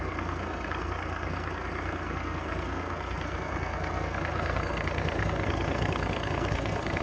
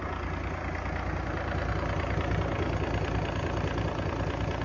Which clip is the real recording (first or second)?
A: second